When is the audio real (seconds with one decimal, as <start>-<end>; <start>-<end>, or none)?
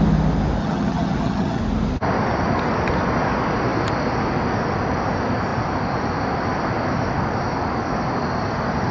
0.0-0.6; 1.6-8.9